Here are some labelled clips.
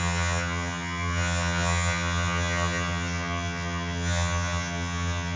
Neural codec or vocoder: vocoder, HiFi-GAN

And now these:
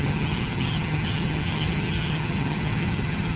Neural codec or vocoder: vocoder, HiFi-GAN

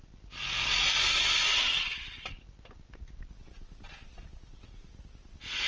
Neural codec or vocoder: none